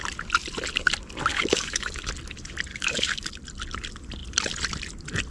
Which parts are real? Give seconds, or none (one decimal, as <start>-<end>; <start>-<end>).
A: 0.0-1.3; 2.1-2.7; 3.3-5.3